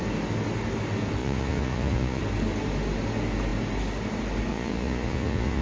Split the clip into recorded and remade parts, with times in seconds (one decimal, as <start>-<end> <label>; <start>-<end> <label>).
0.0-1.2 recorded; 1.2-2.2 remade; 2.2-4.5 recorded; 4.5-5.6 remade